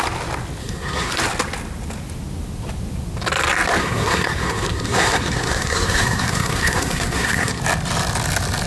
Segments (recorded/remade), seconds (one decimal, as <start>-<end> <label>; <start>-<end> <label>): 0.0-0.6 recorded; 0.6-1.1 remade; 1.1-3.8 recorded; 3.8-7.6 remade; 7.6-8.7 recorded